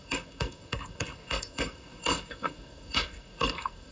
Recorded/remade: remade